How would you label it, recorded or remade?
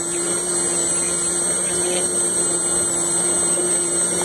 recorded